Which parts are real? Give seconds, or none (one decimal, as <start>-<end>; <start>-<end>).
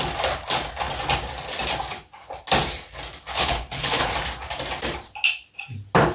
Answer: 0.0-3.3; 4.1-6.1